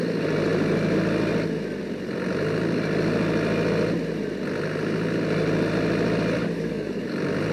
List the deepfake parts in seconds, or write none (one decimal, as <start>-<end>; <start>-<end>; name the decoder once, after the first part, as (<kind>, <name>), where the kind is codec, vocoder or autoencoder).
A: 6.4-7.0 (codec, DAC)